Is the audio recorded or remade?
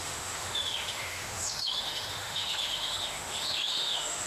remade